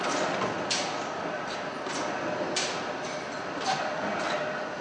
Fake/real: real